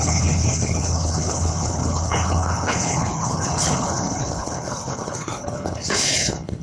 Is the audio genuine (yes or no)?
no